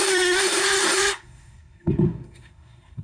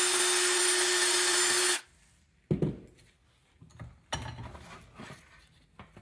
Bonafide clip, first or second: second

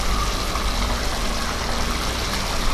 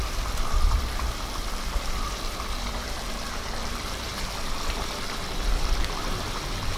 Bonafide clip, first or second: first